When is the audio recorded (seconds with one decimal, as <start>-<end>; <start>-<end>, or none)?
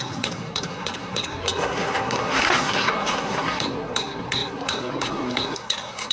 none